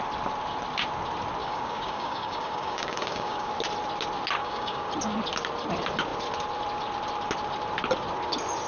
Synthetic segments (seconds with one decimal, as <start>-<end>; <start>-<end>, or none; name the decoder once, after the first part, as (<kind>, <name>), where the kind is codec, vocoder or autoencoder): 1.4-3.5 (codec, DAC); 4.4-4.9